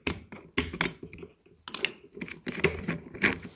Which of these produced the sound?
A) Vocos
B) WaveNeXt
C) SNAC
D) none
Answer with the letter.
D